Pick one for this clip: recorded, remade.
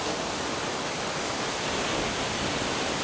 recorded